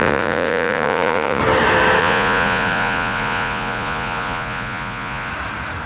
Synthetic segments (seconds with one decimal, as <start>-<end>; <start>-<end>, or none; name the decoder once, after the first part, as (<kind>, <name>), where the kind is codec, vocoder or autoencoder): 0.0-1.4 (vocoder, Vocos); 2.0-5.3